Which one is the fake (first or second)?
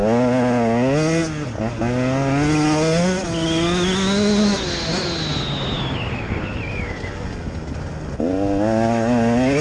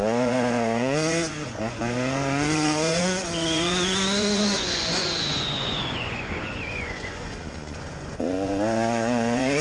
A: second